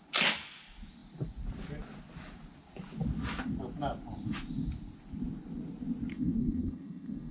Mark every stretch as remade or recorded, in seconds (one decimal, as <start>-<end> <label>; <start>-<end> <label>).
0.0-6.1 recorded; 6.1-7.3 remade